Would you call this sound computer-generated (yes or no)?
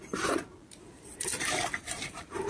yes